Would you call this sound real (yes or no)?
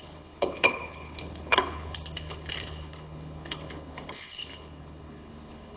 no